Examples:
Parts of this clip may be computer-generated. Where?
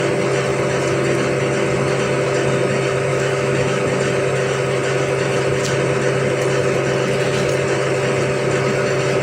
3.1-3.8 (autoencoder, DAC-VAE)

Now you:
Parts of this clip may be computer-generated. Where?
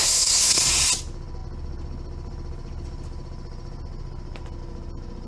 0.0-0.6 (codec, SNAC)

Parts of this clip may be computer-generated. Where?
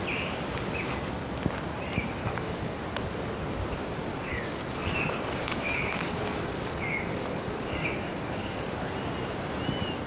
2.2-2.8 (codec, DAC); 4.1-8.9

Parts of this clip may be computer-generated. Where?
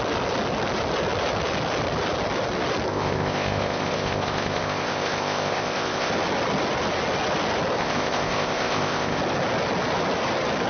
2.9-6.1 (codec, ZipCodec); 7.8-9.2